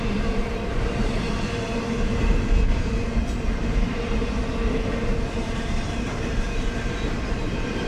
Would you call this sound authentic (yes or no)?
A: no